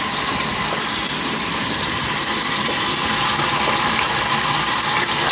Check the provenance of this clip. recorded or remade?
recorded